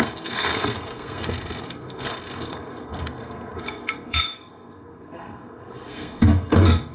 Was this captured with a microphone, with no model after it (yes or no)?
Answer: no